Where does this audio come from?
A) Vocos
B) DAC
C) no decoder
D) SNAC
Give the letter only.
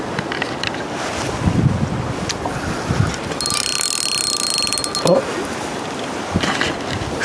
C